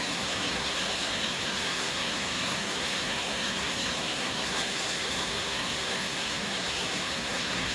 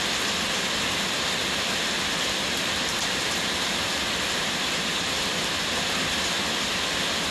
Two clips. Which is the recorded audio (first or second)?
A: second